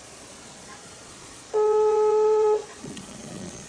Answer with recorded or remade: remade